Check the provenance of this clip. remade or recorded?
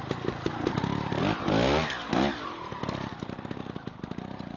recorded